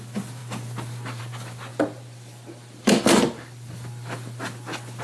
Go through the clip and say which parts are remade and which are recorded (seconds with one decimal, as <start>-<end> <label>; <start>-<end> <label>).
0.0-1.7 recorded; 1.7-5.0 remade

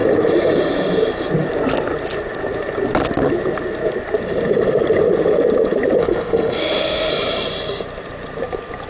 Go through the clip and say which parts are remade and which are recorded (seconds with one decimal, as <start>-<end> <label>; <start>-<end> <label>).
0.0-6.0 recorded; 6.0-7.1 remade; 7.1-8.9 recorded

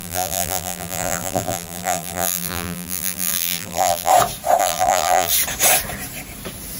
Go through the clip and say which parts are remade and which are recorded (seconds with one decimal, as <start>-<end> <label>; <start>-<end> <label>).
0.0-4.1 remade; 4.1-4.6 recorded; 4.6-5.3 remade; 5.3-6.8 recorded

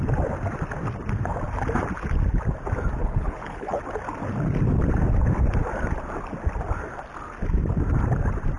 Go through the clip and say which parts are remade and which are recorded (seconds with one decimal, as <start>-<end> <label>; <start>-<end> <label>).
0.0-3.0 recorded; 3.0-3.8 remade; 3.8-8.6 recorded